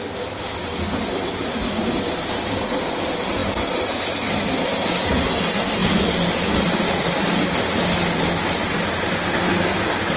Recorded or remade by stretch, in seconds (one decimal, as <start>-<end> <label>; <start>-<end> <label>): 0.0-10.2 recorded